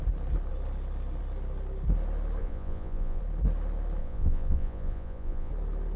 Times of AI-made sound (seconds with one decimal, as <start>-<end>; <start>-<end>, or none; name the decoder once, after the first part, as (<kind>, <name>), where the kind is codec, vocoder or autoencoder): 2.4-3.2 (vocoder, Vocos); 4.0-5.5

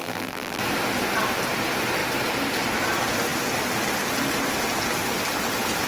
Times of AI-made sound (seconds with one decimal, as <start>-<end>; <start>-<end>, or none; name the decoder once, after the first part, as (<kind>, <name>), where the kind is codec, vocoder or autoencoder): 0.0-0.6 (vocoder, BigVGAN v2)

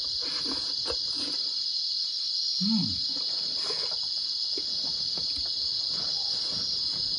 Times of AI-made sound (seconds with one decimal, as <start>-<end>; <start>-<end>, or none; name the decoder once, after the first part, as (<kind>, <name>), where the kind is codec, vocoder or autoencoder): none

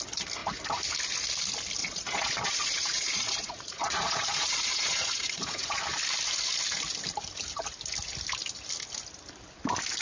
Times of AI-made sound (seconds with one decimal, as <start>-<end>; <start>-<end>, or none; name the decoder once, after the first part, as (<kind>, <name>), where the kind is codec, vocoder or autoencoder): 1.8-5.8 (vocoder, Vocos)

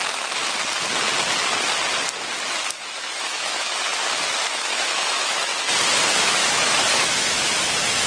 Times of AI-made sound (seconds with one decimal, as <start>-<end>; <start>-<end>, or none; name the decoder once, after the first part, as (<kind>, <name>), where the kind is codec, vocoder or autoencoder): 0.0-0.4 (autoencoder, DAC-VAE); 2.7-3.9; 4.5-5.5; 6.2-8.1

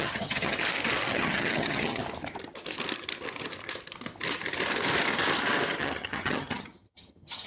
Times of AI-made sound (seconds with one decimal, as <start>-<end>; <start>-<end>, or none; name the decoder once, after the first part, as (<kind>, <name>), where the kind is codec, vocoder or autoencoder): 0.0-0.6 (vocoder, HiFi-GAN); 1.1-2.0; 5.8-7.5

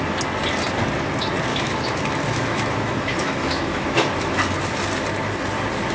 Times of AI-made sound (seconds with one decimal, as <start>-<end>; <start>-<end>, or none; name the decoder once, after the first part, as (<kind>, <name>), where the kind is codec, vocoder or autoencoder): 1.5-4.4 (autoencoder, DAC-VAE)

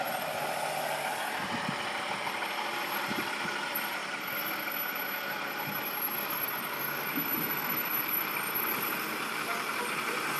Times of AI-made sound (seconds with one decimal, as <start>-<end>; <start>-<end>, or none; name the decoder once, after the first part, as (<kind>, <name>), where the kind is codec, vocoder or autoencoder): 0.0-4.0 (vocoder, BigVGAN v2); 7.9-10.4